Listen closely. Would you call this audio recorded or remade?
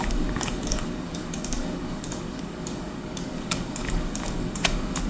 remade